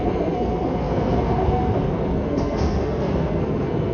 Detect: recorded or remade remade